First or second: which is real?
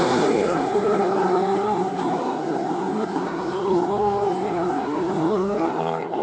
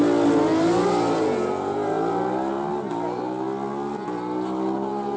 second